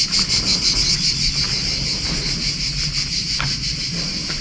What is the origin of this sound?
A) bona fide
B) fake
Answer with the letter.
A